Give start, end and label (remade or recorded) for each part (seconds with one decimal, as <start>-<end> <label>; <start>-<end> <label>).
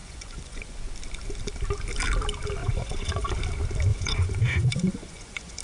0.0-0.9 remade; 0.9-2.6 recorded; 2.6-3.3 remade; 3.3-3.9 recorded; 3.9-5.6 remade